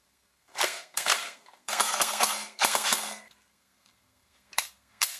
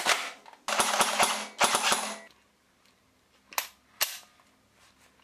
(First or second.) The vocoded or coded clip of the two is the first